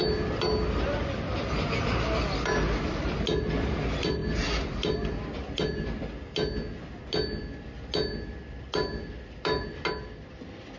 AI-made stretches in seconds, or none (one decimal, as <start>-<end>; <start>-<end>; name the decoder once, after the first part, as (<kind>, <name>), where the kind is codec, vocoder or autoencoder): none